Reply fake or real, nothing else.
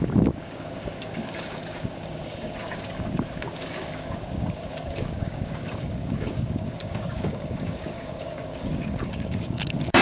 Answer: fake